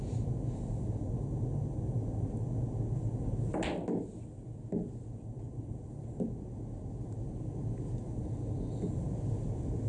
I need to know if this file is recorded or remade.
recorded